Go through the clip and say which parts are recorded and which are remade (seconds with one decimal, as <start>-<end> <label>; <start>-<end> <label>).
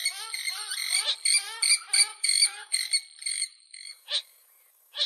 0.0-2.1 recorded; 2.1-2.8 remade; 2.8-3.3 recorded; 3.3-5.1 remade